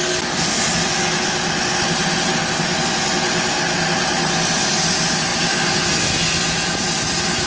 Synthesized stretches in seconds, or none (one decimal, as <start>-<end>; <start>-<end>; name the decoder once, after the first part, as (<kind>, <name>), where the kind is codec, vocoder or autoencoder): none